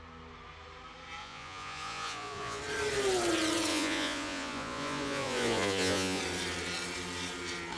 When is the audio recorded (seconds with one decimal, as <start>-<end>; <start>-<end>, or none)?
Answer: 0.0-1.2; 2.6-3.7; 6.2-7.8